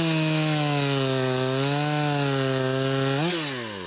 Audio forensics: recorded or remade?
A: recorded